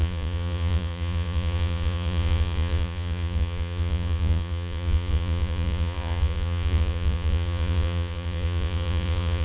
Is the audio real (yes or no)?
no